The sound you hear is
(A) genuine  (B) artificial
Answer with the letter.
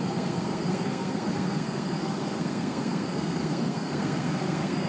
B